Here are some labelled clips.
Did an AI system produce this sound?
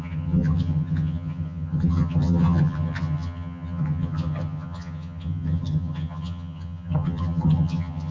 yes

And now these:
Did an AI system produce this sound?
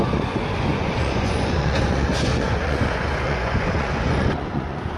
yes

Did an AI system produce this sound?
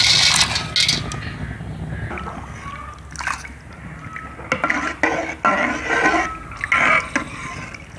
no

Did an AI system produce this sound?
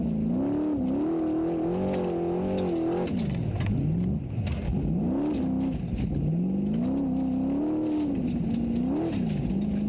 no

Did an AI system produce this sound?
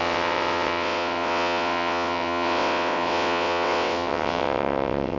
yes